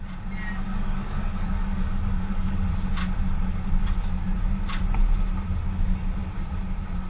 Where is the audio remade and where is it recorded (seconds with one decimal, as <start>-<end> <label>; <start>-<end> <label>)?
0.0-0.7 recorded; 0.7-2.7 remade; 2.7-7.1 recorded